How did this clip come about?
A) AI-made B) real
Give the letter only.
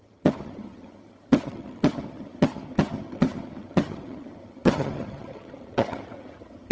A